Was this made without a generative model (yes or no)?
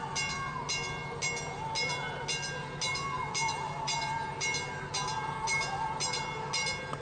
yes